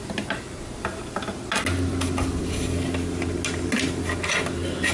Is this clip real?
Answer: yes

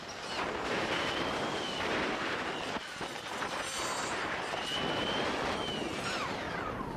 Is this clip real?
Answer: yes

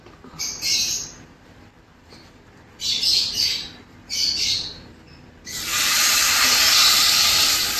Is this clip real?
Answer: no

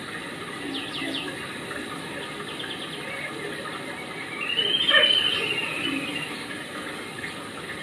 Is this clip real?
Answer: yes